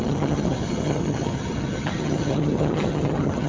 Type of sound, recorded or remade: remade